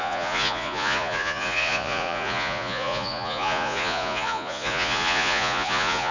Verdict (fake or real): fake